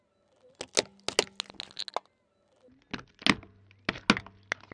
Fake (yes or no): no